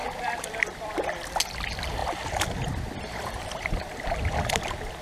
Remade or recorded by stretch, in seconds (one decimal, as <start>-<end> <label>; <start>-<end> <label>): 0.0-0.9 remade; 0.9-2.0 recorded; 2.0-4.0 remade; 4.0-5.0 recorded